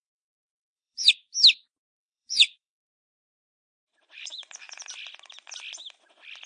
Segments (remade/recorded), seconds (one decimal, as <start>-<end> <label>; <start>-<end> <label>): 0.0-0.6 recorded; 0.6-1.1 remade; 1.1-2.0 recorded; 2.0-4.9 remade; 4.9-6.5 recorded

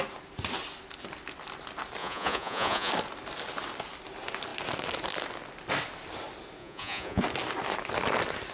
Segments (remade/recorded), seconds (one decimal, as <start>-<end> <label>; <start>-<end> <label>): 0.0-2.0 recorded; 2.0-2.9 remade; 2.9-6.6 recorded; 6.6-7.2 remade; 7.2-8.5 recorded

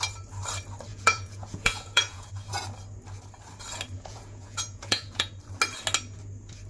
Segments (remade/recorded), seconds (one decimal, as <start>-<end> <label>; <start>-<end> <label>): 0.0-0.9 recorded; 0.9-2.3 remade; 2.3-4.1 recorded; 4.1-5.3 remade; 5.3-6.7 recorded

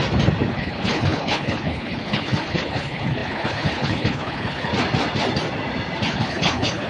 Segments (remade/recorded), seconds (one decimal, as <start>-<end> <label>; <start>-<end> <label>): 0.0-0.5 recorded; 0.5-4.7 remade; 4.7-6.1 recorded; 6.1-6.9 remade

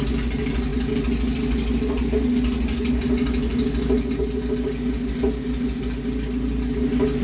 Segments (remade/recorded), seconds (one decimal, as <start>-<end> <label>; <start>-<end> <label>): 0.0-7.2 recorded

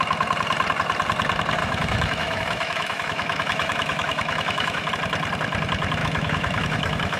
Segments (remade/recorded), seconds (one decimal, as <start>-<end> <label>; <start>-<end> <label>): 0.0-1.6 recorded; 1.6-4.9 remade; 4.9-6.0 recorded; 6.0-7.2 remade